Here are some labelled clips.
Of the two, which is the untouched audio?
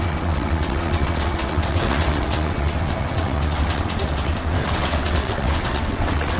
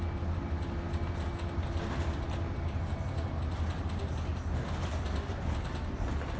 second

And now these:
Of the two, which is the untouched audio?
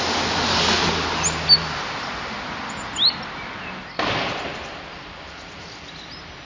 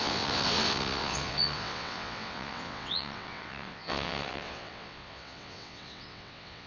first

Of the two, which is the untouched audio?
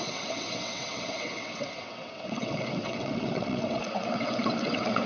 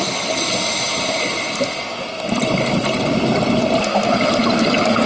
second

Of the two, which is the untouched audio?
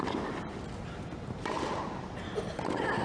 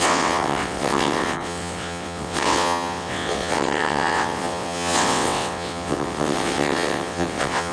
first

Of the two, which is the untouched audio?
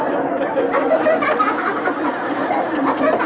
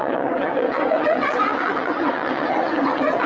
first